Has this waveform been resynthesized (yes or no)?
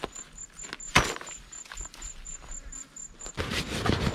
no